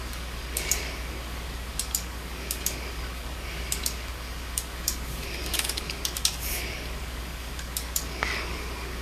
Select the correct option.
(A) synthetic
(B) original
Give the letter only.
A